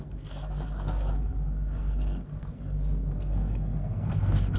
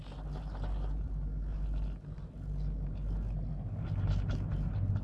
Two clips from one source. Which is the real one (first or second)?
second